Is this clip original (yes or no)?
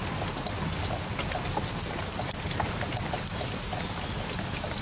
yes